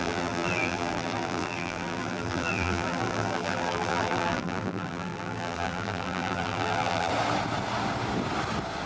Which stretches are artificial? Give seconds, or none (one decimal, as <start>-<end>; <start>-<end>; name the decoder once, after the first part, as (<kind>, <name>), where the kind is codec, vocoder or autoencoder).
0.0-7.1 (vocoder, BigVGAN v2)